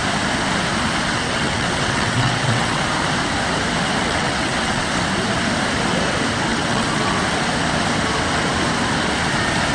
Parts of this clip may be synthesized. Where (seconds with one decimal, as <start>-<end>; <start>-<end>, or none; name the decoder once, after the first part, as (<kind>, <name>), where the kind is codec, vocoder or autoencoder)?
1.1-2.8 (vocoder, WaveNeXt); 4.0-4.9; 6.5-7.1

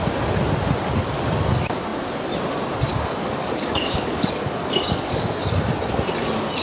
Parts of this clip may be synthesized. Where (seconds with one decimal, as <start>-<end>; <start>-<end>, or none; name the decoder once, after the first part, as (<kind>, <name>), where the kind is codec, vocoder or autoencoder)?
2.9-5.2 (codec, DAC)